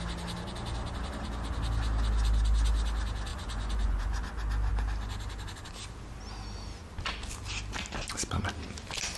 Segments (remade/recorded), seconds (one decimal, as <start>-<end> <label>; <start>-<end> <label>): 0.0-3.3 recorded; 3.3-4.2 remade; 4.2-9.2 recorded